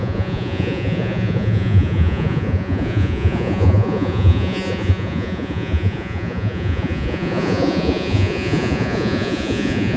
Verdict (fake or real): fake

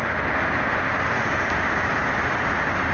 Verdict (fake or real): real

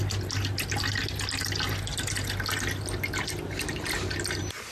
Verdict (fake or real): real